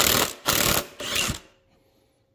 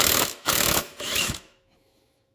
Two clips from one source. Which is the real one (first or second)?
first